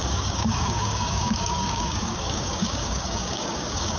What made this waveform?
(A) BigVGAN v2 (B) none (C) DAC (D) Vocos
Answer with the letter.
C